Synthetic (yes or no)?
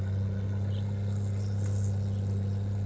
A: no